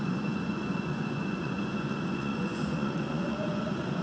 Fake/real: fake